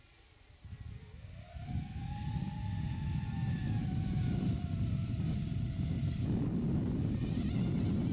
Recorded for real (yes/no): yes